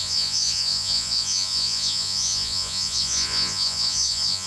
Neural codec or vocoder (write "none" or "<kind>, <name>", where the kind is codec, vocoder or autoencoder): vocoder, Vocos